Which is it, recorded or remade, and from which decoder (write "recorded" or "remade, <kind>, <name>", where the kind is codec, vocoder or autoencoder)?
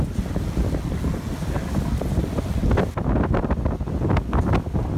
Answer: recorded